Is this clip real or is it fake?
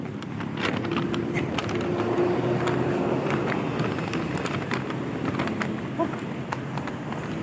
real